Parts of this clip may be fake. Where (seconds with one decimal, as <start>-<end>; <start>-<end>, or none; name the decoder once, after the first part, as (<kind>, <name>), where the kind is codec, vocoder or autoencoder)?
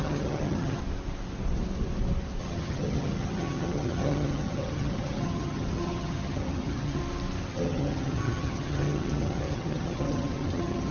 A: 0.0-0.8 (vocoder, HiFi-GAN); 2.4-7.0; 7.5-10.9